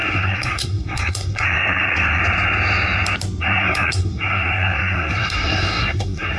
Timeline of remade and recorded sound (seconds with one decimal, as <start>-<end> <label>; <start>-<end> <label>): 0.0-2.2 remade; 2.2-3.4 recorded; 3.4-6.4 remade